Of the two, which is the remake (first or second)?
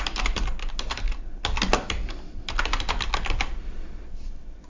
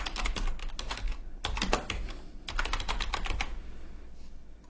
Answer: first